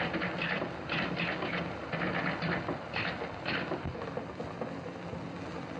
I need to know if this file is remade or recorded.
recorded